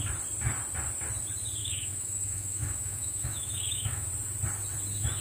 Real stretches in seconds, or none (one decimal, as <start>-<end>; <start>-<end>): 0.0-1.6; 4.1-5.2